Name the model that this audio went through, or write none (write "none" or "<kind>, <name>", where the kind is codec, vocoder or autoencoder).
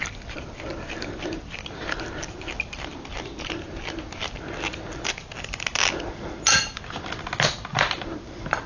none